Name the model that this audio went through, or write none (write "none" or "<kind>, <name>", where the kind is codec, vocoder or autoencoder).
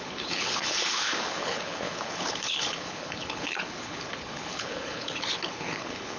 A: codec, HILCodec